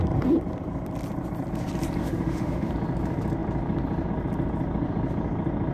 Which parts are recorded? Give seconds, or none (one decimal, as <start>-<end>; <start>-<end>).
0.0-2.0; 2.7-5.7